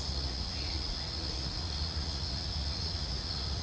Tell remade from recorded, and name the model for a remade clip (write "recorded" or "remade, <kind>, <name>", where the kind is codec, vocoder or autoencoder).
remade, vocoder, Vocos